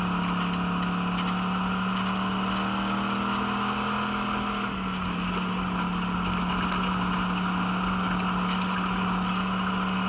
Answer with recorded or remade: recorded